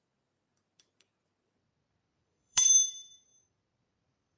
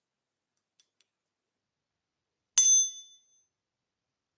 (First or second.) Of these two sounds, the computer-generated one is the first